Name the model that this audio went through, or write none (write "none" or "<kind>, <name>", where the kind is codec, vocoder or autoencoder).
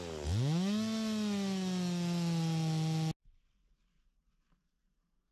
none